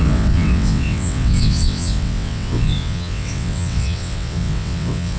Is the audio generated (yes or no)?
yes